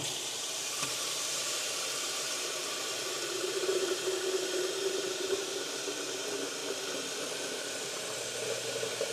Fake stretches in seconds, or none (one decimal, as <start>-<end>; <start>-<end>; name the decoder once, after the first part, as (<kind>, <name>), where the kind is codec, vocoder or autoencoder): 0.0-6.6 (vocoder, BigVGAN v2); 7.8-9.1